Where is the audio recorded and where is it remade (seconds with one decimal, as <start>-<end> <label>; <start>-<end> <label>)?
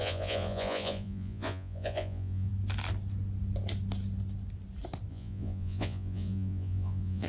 0.0-2.5 remade; 2.5-5.1 recorded; 5.1-7.3 remade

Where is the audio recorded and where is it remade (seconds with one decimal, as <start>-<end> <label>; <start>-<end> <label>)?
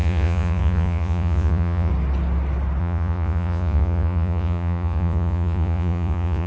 0.0-1.9 remade; 1.9-2.8 recorded; 2.8-6.5 remade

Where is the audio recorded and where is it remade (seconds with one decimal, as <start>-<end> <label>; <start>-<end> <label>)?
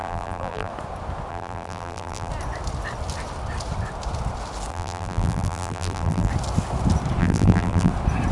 0.0-0.7 remade; 0.7-1.3 recorded; 1.3-2.3 remade; 2.3-4.7 recorded; 4.7-6.3 remade; 6.3-7.2 recorded; 7.2-7.9 remade; 7.9-8.3 recorded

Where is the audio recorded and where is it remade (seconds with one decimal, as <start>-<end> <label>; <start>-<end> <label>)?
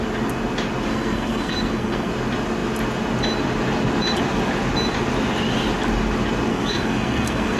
0.0-0.9 recorded; 0.9-2.1 remade; 2.1-6.5 recorded; 6.5-7.6 remade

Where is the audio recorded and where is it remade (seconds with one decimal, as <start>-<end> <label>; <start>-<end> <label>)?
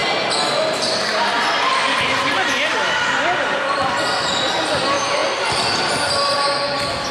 0.0-1.8 recorded; 1.8-3.8 remade; 3.8-7.1 recorded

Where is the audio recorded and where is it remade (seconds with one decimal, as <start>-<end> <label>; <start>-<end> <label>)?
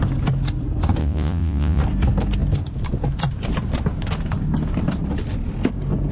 0.0-1.0 recorded; 1.0-1.8 remade; 1.8-6.1 recorded